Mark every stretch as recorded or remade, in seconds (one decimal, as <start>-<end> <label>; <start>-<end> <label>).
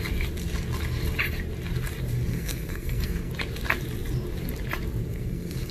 0.0-2.3 recorded; 2.3-3.3 remade; 3.3-5.0 recorded; 5.0-5.7 remade